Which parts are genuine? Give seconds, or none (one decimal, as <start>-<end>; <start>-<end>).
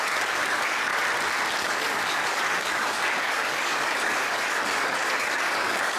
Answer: 0.9-1.6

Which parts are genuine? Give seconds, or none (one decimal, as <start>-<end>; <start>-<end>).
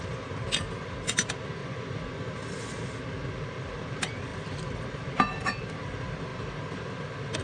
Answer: 0.0-1.6; 2.3-7.4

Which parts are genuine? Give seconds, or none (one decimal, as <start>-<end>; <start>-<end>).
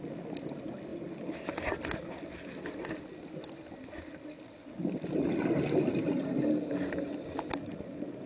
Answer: 0.0-8.3